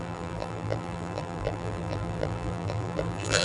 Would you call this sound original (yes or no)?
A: no